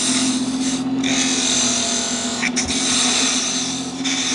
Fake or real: real